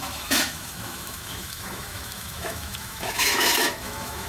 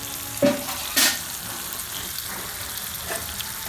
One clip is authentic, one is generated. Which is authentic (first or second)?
second